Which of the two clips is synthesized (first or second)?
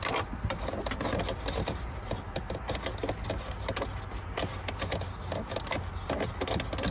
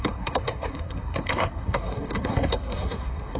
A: second